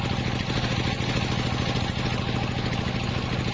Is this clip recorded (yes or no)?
yes